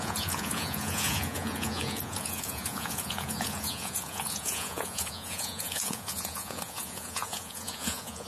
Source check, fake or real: fake